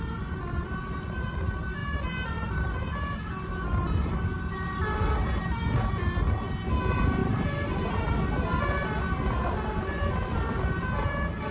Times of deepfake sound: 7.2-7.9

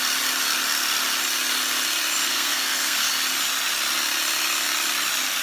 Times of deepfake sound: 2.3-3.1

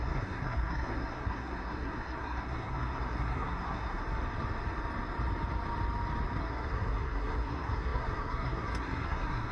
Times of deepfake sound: 0.0-4.0; 6.4-9.5